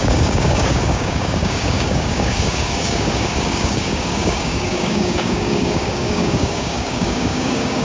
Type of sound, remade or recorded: remade